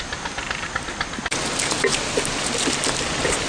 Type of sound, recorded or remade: recorded